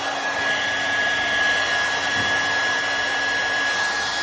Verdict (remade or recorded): recorded